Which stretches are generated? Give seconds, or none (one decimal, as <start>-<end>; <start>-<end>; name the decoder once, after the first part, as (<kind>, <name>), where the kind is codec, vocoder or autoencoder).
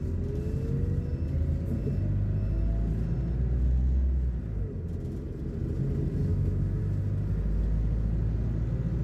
6.3-6.8 (autoencoder, DAC-VAE)